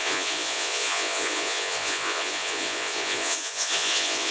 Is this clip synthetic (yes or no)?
yes